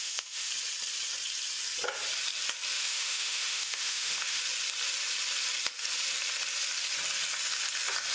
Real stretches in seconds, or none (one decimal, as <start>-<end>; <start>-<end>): 0.5-2.8; 4.4-8.1